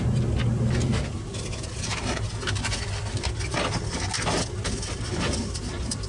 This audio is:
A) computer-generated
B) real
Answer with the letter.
B